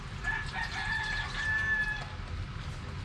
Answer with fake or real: real